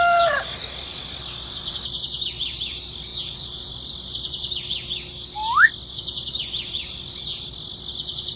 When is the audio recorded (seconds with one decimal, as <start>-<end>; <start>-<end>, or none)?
0.0-3.1; 3.7-8.4